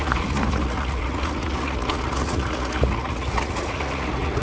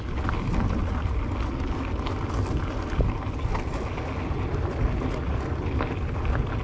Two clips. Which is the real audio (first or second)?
second